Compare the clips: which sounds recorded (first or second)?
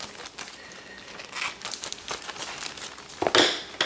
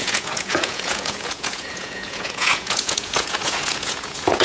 first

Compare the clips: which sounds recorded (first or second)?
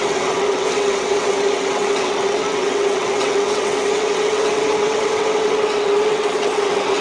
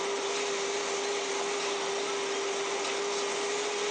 second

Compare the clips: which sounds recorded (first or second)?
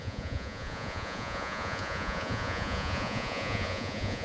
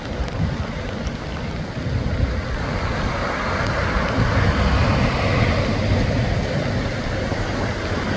second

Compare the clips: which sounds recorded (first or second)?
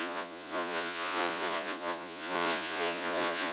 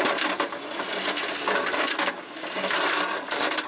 second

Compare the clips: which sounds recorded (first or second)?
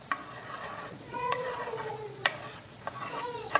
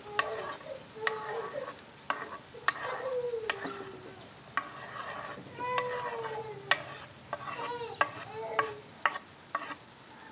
second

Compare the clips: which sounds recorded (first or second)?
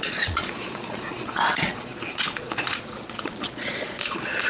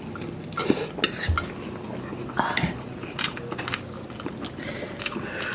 second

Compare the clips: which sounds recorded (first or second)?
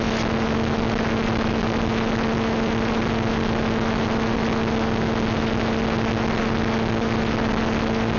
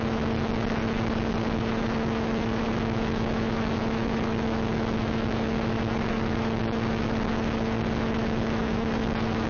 first